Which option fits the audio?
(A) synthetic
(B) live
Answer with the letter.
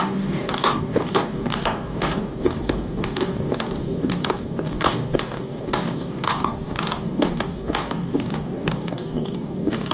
A